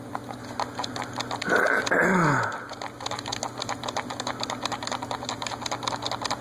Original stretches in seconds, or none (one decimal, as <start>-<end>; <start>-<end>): 0.0-6.4

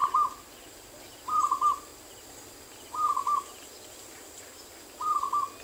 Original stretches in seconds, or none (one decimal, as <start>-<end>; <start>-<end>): 0.0-5.6

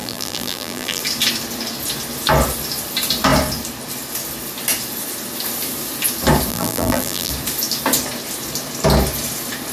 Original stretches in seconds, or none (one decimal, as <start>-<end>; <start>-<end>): 1.0-6.5; 7.3-9.7

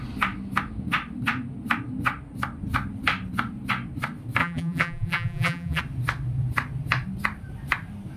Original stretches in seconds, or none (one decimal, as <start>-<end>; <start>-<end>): 0.0-4.4; 5.8-8.2

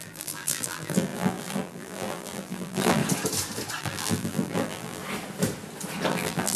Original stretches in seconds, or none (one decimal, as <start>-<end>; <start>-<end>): 3.0-3.8; 5.0-6.1

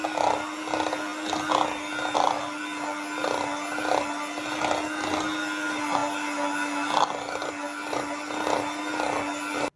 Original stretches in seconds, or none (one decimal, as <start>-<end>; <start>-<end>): 0.0-9.8

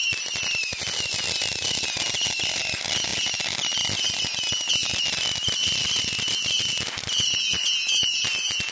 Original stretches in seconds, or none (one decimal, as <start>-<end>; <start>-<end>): 0.8-8.7

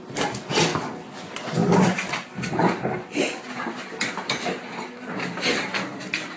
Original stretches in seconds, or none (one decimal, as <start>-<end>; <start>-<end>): 0.0-6.4